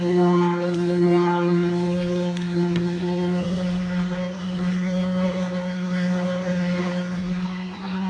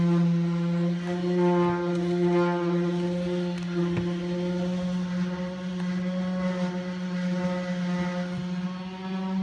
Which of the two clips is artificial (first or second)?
first